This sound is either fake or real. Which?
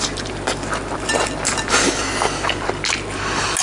real